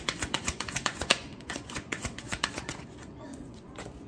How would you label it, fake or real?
fake